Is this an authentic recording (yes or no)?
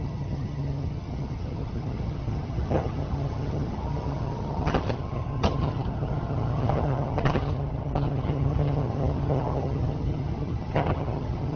no